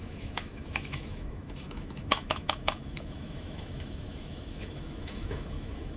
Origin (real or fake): fake